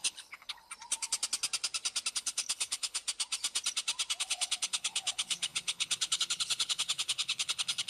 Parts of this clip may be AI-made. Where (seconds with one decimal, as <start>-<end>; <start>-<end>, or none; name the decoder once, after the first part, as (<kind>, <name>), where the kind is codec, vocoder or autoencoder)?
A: 0.0-0.7 (codec, HILCodec); 2.1-3.0; 4.2-7.9